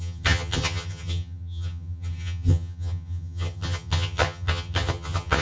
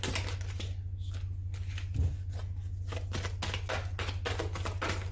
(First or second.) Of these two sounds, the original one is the second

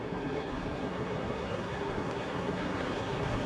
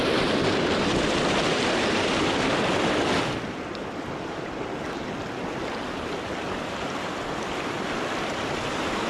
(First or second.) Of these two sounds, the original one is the second